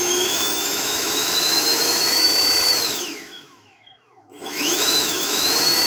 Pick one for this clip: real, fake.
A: fake